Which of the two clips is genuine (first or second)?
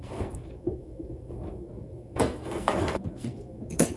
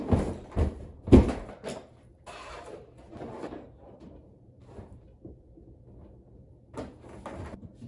second